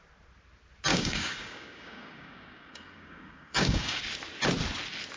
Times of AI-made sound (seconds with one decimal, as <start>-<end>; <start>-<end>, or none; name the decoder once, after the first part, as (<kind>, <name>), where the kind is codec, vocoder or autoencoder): 0.9-4.0 (codec, DAC)